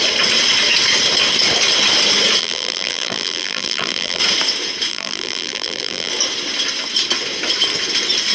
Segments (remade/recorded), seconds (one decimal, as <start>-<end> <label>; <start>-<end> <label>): 0.0-2.4 recorded; 2.4-4.2 remade; 4.2-4.9 recorded; 4.9-6.1 remade; 6.1-8.3 recorded